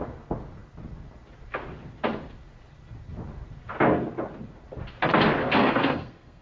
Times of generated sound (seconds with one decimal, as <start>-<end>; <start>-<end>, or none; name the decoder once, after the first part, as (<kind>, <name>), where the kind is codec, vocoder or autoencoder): 5.4-6.4 (codec, SNAC)